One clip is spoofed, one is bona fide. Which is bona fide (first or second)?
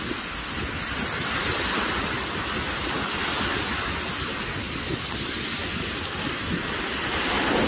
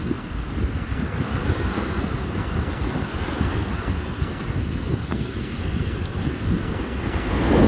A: first